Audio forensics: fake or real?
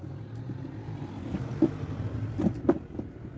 real